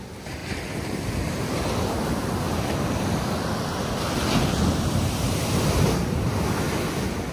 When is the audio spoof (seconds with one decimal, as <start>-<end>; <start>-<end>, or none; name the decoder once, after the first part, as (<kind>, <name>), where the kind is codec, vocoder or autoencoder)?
0.0-7.3 (vocoder, BigVGAN v2)